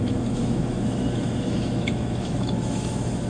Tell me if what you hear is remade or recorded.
remade